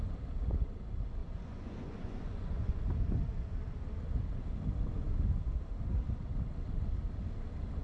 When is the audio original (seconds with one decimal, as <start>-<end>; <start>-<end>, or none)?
0.0-1.2; 2.8-7.8